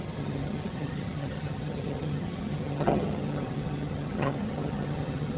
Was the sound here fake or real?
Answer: fake